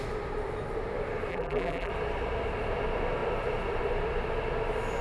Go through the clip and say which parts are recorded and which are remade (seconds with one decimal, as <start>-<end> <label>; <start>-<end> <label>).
0.0-1.3 recorded; 1.3-1.9 remade; 1.9-5.0 recorded